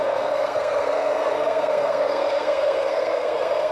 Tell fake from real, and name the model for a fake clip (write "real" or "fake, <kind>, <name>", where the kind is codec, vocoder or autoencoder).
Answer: fake, codec, SNAC